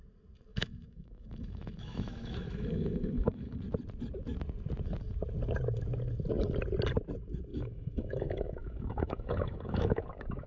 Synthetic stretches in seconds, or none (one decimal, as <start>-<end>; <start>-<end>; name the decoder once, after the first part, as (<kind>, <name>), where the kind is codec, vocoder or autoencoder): 0.5-3.6 (autoencoder, DAC-VAE); 7.5-10.5